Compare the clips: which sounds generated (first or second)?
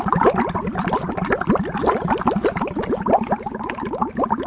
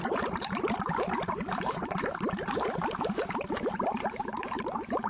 second